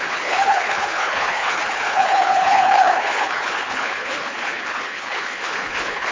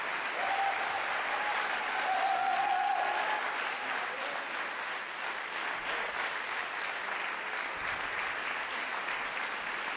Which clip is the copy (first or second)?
first